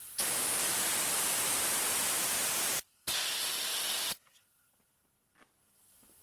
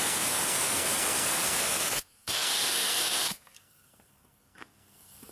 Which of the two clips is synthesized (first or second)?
second